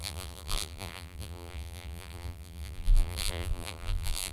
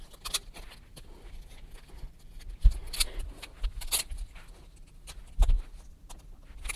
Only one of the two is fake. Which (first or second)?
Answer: first